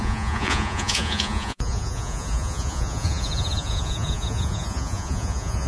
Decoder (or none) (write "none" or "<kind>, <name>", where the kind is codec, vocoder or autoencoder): vocoder, Vocos